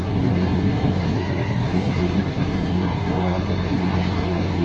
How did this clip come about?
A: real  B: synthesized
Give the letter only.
B